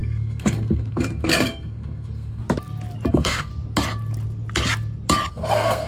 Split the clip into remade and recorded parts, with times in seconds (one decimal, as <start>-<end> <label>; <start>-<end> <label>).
0.0-2.4 remade; 2.4-3.1 recorded; 3.1-3.5 remade; 3.5-5.3 recorded; 5.3-5.9 remade